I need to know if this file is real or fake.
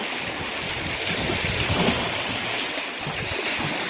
real